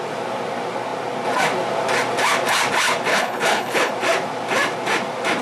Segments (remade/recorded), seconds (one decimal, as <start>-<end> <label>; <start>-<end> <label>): 0.0-3.1 recorded; 3.1-3.9 remade; 3.9-5.4 recorded